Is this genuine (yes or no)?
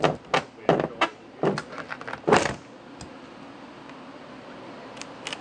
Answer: yes